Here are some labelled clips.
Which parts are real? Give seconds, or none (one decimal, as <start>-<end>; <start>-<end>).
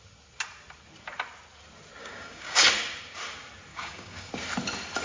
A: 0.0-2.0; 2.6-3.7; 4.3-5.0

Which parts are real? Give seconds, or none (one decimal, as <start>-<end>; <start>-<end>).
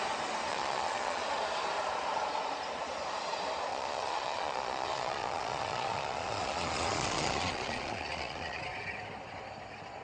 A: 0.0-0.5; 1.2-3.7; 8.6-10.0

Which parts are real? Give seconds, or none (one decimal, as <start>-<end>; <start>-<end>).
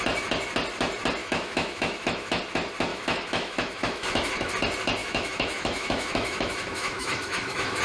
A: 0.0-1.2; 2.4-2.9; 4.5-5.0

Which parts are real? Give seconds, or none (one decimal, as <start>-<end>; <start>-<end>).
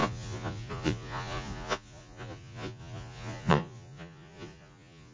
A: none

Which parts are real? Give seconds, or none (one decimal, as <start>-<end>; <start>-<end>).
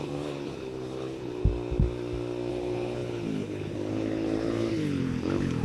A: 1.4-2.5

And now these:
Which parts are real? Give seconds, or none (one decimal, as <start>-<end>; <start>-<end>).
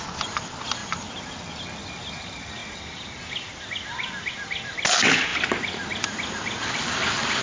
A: 0.0-7.4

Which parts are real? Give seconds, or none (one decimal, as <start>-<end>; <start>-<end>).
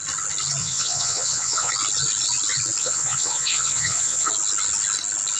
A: 0.0-0.6; 1.7-2.8; 4.3-5.4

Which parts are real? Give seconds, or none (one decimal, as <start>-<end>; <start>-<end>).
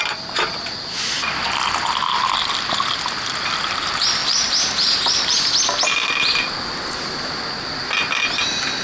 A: 0.0-4.2; 5.4-8.8